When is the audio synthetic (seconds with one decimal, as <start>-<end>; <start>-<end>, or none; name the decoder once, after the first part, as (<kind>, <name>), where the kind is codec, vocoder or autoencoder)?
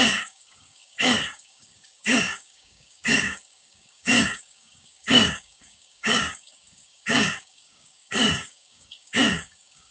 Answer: 0.0-9.9 (codec, DAC)